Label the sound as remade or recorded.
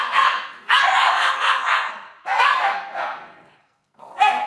remade